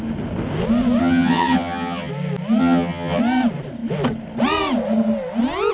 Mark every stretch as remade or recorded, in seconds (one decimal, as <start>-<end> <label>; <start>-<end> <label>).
0.0-1.0 recorded; 1.0-2.1 remade; 2.1-2.6 recorded; 2.6-3.2 remade; 3.2-5.7 recorded